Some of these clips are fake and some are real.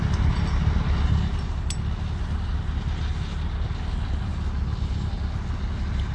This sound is real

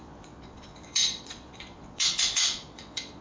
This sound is fake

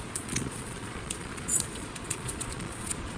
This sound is fake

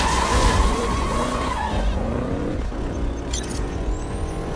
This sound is fake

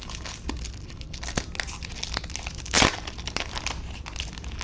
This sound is real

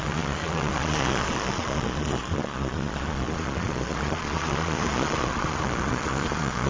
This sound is fake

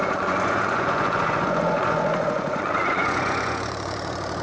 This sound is fake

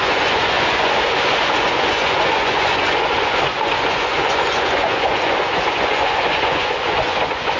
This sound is fake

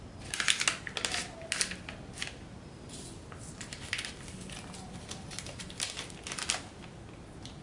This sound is real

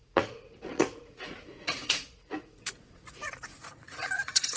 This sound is fake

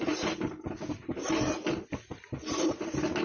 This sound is real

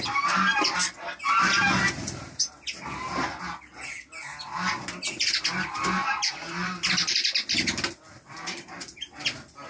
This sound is real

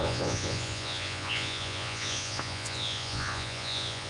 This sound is fake